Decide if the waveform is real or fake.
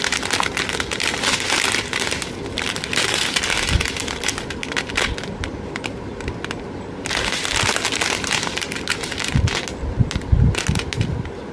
real